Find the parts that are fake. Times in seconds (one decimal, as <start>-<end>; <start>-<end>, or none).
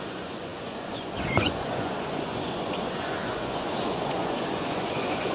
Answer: 0.0-5.3